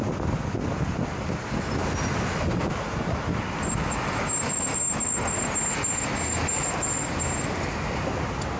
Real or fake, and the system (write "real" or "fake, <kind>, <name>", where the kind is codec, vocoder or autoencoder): real